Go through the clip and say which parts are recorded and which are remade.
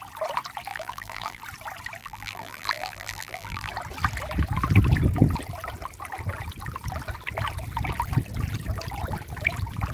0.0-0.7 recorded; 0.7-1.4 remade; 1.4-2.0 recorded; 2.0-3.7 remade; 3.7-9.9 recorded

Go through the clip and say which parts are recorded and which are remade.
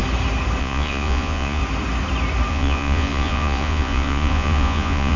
0.0-0.6 recorded; 0.6-1.6 remade; 1.6-2.5 recorded; 2.5-5.2 remade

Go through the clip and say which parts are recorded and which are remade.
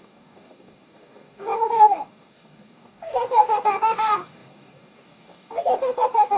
0.0-6.4 remade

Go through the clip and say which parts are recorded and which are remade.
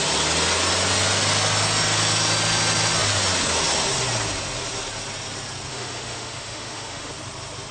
0.0-5.7 recorded; 5.7-7.1 remade; 7.1-7.7 recorded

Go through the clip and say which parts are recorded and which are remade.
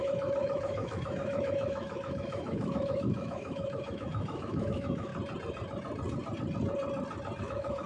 0.0-5.1 remade; 5.1-7.4 recorded; 7.4-7.9 remade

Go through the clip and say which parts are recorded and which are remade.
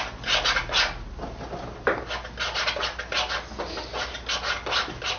0.0-5.2 recorded